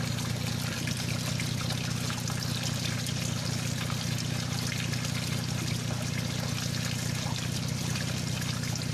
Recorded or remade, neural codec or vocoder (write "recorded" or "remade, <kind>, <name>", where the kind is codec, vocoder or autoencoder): recorded